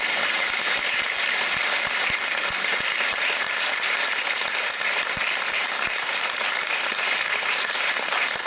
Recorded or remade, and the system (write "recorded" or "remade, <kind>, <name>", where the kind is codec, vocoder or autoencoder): remade, vocoder, BigVGAN v2